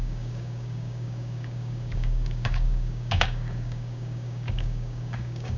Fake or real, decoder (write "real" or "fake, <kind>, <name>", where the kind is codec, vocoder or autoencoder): fake, codec, DAC